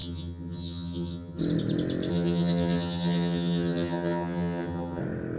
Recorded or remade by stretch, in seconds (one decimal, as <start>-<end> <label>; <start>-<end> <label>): 0.0-1.4 remade; 1.4-2.1 recorded; 2.1-5.0 remade; 5.0-5.4 recorded